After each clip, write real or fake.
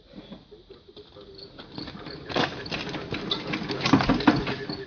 real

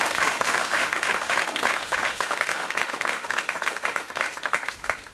fake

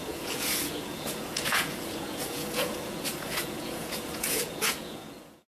fake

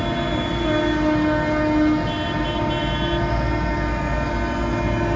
real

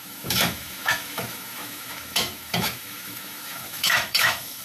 fake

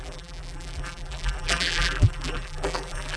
fake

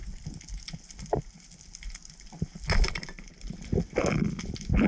real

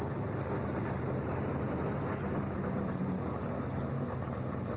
real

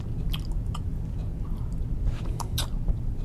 real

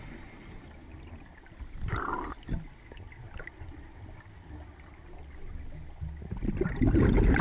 real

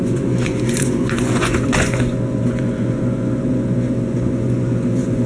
fake